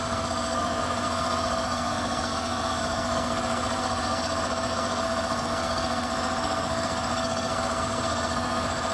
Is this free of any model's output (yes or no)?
no